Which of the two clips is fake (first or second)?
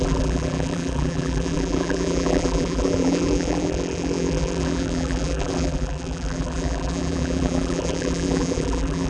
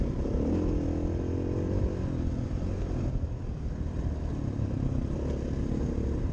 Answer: first